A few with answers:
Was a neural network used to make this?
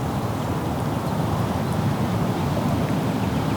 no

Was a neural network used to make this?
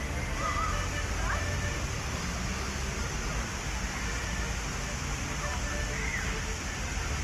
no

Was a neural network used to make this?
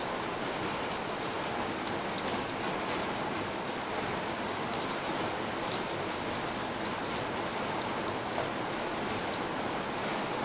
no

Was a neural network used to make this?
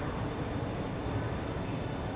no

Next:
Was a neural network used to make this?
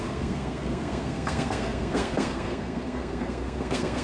yes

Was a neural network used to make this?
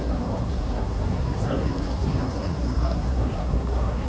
yes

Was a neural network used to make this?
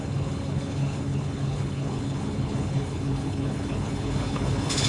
yes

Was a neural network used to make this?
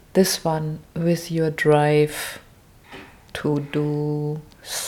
no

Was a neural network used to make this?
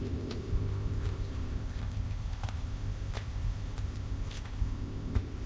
yes